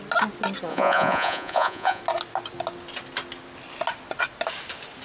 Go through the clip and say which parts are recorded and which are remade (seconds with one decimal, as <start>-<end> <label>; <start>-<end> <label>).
0.0-0.7 recorded; 0.7-2.0 remade; 2.0-5.0 recorded